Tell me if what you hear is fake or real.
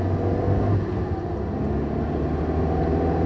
real